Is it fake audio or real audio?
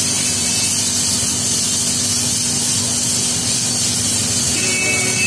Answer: real